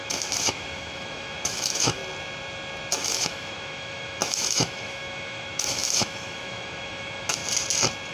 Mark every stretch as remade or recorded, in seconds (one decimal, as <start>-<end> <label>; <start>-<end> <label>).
0.0-2.0 remade; 2.0-2.9 recorded; 2.9-7.4 remade; 7.4-8.1 recorded